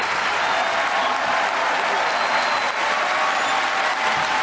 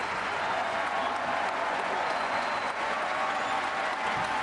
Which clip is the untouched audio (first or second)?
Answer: first